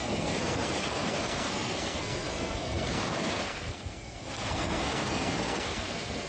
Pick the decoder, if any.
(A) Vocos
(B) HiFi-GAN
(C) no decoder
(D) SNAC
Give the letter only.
D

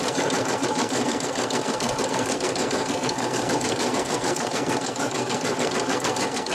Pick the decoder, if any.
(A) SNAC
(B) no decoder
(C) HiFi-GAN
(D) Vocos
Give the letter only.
A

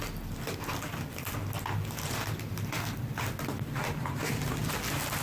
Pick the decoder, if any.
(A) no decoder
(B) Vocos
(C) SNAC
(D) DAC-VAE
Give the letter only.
A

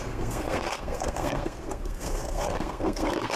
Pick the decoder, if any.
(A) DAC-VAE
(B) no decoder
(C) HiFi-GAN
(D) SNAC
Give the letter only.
D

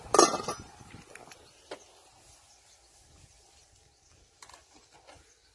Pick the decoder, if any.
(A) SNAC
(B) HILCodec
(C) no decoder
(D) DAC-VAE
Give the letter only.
C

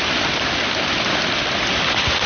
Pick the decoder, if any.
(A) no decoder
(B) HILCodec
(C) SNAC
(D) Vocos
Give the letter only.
A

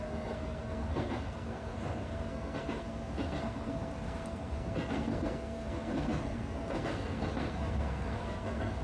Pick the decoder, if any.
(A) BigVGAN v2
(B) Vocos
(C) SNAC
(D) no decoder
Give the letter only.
C